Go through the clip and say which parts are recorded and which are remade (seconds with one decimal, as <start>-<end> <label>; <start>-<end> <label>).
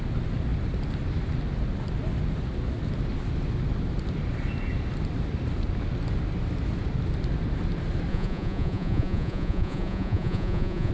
0.0-8.1 recorded; 8.1-10.9 remade